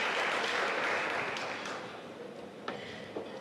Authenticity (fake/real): real